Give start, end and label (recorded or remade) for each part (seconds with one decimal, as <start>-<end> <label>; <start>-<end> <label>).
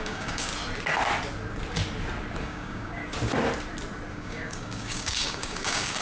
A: 0.0-0.5 remade; 0.5-2.4 recorded; 2.4-3.0 remade; 3.0-4.1 recorded; 4.1-6.0 remade